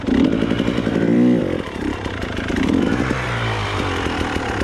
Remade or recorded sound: remade